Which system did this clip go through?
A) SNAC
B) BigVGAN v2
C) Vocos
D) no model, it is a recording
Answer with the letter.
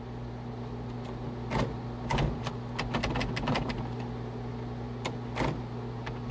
D